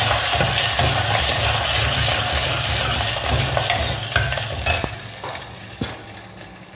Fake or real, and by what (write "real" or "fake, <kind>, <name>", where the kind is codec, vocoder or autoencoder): real